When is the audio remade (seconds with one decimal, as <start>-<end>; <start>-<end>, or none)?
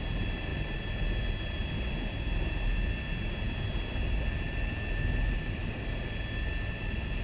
none